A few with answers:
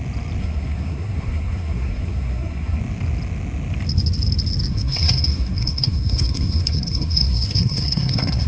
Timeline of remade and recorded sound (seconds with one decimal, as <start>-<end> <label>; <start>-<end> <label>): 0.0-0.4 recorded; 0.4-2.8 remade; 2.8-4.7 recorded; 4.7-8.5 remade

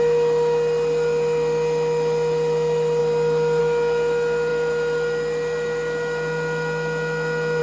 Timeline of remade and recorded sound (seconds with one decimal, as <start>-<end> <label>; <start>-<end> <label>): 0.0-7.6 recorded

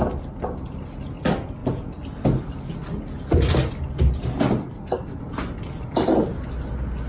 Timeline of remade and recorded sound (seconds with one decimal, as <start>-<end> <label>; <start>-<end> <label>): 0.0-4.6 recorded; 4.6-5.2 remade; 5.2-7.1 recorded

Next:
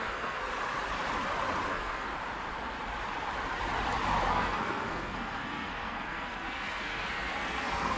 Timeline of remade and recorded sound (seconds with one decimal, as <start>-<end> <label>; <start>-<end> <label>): 0.0-0.5 remade; 0.5-1.7 recorded; 1.7-2.1 remade; 2.1-4.3 recorded; 4.3-8.0 remade

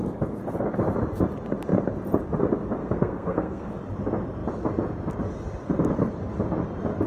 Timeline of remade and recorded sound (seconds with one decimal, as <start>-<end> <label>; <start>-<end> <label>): 0.0-2.8 recorded; 2.8-3.7 remade; 3.7-7.1 recorded

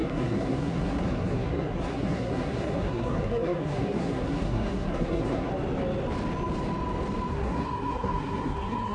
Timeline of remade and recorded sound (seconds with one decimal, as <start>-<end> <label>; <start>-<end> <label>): 0.0-5.5 remade; 5.5-7.3 recorded; 7.3-8.9 remade